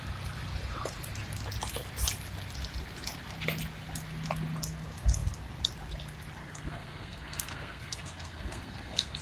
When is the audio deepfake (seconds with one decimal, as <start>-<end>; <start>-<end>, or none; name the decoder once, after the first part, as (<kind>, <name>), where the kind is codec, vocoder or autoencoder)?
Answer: 6.4-9.2 (codec, SNAC)